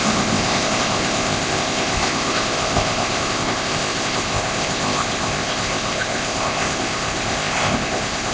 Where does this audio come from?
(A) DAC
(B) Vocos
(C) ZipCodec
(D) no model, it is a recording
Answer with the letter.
C